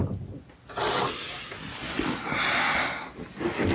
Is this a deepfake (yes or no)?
no